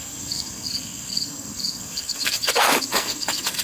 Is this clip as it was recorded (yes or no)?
no